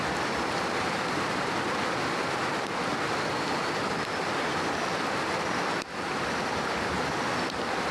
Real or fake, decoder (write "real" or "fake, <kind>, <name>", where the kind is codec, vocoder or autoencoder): real